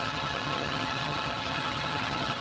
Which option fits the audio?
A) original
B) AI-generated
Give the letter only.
B